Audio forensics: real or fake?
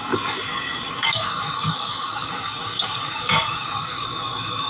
fake